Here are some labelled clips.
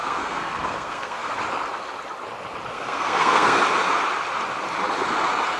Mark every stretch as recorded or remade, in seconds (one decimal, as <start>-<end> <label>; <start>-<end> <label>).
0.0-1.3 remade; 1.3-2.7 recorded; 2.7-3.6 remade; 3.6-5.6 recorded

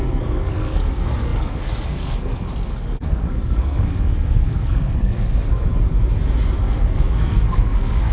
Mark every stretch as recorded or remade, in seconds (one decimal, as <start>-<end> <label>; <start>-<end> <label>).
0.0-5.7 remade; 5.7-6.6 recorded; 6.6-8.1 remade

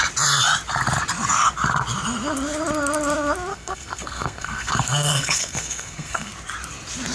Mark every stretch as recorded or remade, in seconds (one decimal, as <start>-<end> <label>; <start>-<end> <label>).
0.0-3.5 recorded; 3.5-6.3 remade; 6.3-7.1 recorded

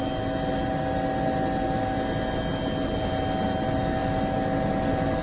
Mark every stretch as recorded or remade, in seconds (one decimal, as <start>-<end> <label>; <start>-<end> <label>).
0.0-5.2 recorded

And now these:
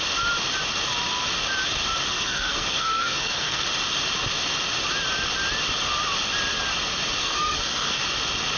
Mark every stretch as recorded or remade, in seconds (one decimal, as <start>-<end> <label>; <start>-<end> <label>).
0.0-2.1 recorded; 2.1-3.6 remade; 3.6-7.2 recorded; 7.2-8.0 remade; 8.0-8.6 recorded

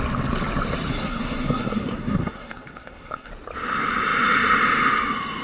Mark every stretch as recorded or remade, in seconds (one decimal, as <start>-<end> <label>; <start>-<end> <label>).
0.0-0.9 recorded; 0.9-3.3 remade; 3.3-5.4 recorded